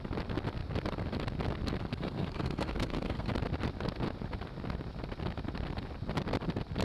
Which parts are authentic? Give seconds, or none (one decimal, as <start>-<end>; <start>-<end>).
0.0-1.8; 3.3-6.8